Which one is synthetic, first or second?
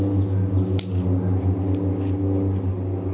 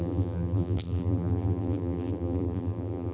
second